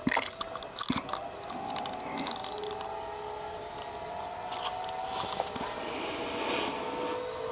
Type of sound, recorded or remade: recorded